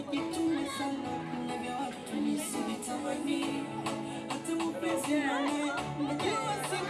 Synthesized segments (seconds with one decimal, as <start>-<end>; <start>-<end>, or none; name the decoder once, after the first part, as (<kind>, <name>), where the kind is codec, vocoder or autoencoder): none